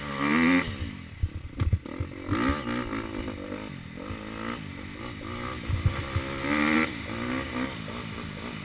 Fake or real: real